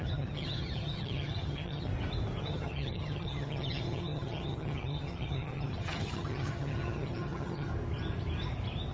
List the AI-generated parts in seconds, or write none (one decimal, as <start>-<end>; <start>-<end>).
0.0-1.9; 2.4-7.7

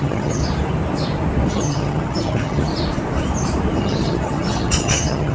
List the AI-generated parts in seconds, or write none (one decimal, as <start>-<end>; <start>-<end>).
0.0-0.4; 1.5-2.7; 3.8-5.3